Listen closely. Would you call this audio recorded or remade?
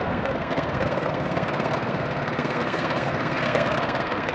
remade